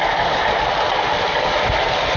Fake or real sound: real